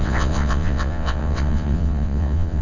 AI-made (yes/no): yes